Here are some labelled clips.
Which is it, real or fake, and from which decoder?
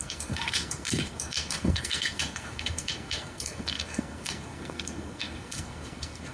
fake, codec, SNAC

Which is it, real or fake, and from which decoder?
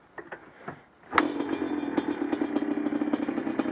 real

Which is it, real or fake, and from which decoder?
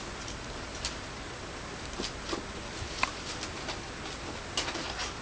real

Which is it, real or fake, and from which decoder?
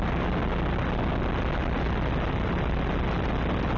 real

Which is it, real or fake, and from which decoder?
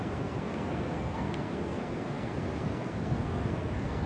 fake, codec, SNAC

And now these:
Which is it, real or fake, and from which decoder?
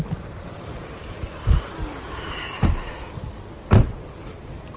real